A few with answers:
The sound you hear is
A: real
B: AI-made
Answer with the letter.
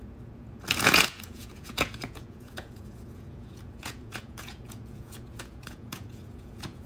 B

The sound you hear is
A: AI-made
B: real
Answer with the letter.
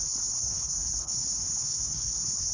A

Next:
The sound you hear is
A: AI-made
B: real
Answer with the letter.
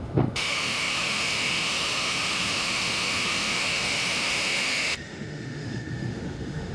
A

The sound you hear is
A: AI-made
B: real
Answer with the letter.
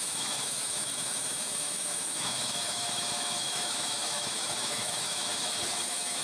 A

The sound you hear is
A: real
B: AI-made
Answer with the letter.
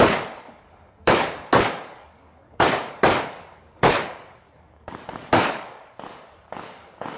B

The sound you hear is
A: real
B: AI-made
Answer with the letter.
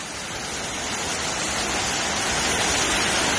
A